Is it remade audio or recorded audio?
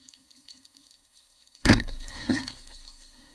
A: remade